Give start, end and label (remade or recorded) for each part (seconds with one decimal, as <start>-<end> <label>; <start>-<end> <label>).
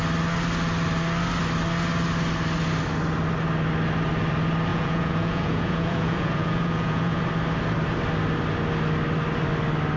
0.0-4.7 recorded; 4.7-7.2 remade; 7.2-10.0 recorded